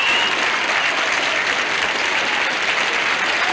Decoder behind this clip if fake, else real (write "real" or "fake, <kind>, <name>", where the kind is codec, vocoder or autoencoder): real